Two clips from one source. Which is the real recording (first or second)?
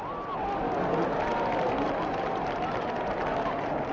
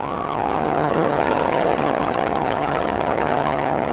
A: first